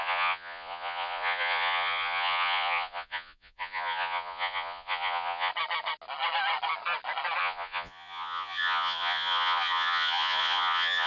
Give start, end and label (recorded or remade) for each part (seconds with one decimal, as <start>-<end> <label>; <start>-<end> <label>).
0.0-5.5 remade; 5.5-7.4 recorded; 7.4-11.1 remade

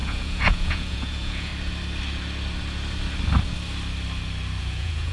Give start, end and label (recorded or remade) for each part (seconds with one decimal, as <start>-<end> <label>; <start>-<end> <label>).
0.0-1.5 remade; 1.5-4.6 recorded; 4.6-5.1 remade